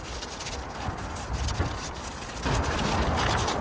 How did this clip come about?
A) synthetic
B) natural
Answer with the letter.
B